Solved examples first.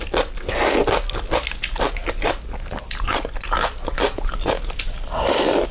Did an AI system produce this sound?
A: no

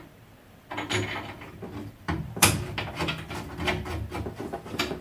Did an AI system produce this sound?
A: yes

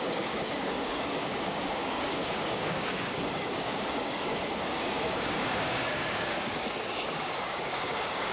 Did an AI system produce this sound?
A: yes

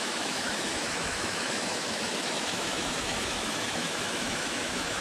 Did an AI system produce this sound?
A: yes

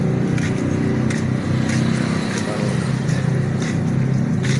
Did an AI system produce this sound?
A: no